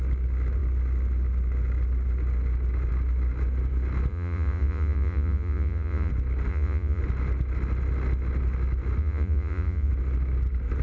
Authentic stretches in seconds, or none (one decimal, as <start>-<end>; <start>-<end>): 0.0-4.1; 6.1-6.5; 7.0-9.0; 9.9-10.8